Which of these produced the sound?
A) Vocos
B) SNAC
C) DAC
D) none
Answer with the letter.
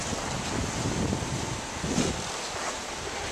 D